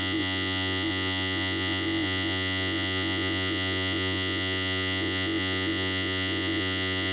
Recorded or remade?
remade